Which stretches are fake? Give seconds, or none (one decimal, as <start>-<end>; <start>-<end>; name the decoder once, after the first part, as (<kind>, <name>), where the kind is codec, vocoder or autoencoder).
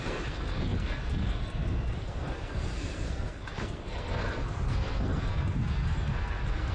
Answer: 0.0-6.7 (codec, SNAC)